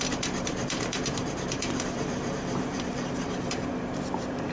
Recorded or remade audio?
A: remade